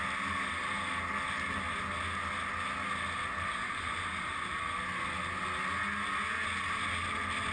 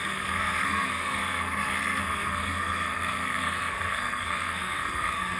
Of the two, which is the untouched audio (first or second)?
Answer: first